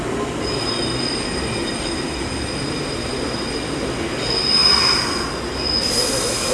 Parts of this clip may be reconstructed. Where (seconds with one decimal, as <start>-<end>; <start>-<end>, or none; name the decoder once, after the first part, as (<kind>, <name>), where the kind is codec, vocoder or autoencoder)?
none